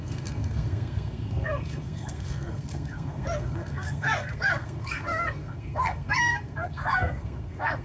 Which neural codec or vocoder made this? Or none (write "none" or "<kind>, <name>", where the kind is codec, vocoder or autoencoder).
codec, SNAC